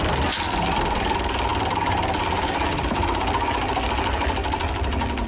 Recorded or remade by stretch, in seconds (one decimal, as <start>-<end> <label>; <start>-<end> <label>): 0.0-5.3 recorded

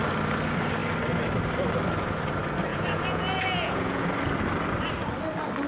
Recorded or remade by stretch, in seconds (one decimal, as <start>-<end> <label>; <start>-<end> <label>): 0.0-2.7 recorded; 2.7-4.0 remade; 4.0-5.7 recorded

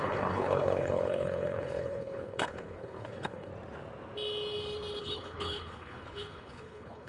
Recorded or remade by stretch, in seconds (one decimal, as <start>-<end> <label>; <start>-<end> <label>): 0.0-3.5 remade; 3.5-5.0 recorded; 5.0-7.1 remade